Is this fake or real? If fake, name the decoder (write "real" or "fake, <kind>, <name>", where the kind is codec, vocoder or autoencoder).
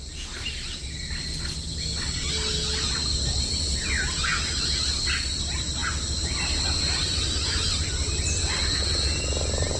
real